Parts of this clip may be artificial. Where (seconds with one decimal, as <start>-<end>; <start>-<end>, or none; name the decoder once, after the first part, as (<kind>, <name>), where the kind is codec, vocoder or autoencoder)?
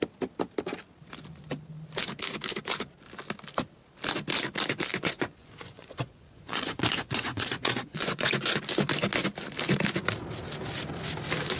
4.9-8.6 (vocoder, Vocos)